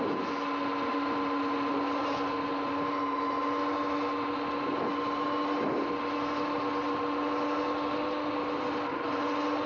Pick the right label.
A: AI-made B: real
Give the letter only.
B